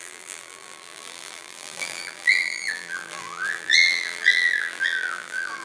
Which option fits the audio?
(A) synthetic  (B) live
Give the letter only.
A